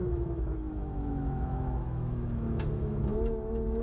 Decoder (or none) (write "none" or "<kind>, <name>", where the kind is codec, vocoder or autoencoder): autoencoder, DAC-VAE